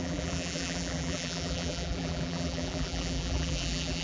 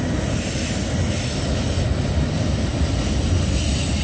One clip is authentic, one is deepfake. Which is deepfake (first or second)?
first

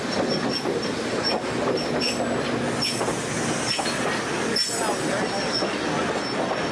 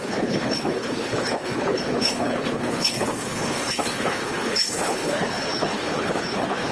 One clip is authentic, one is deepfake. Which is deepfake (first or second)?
second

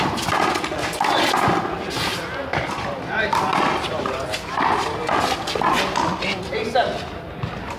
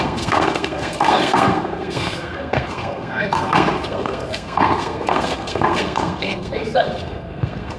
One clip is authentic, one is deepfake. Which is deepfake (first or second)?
second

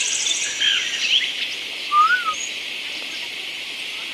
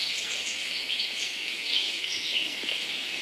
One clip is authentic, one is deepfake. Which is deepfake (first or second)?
second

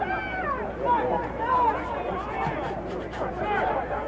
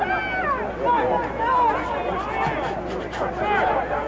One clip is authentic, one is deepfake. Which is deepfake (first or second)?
first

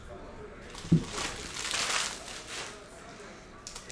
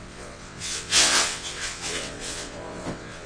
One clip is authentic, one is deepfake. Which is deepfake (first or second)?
second